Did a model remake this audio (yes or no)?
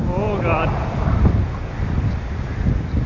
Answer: no